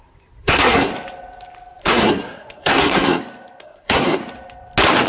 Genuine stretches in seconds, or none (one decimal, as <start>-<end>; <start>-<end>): 0.0-0.4; 0.9-1.8; 3.2-3.6; 4.2-5.1